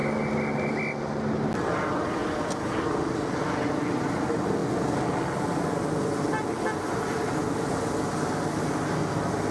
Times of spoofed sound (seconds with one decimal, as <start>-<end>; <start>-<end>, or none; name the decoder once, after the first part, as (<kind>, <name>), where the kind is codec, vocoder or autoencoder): none